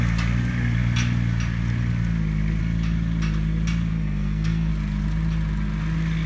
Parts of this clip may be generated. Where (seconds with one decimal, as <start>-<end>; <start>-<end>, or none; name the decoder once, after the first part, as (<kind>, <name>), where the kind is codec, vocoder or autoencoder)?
3.9-4.7 (codec, SNAC)